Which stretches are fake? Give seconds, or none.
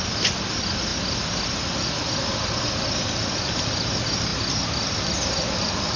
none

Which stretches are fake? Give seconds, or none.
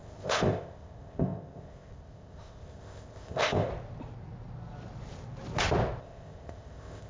0.0-3.7 (codec, ZipCodec); 6.0-7.1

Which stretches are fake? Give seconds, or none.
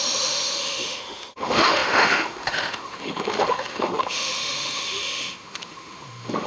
0.0-6.5 (autoencoder, DAC-VAE)